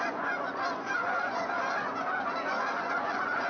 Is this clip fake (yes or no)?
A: yes